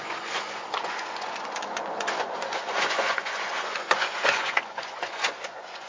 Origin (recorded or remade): remade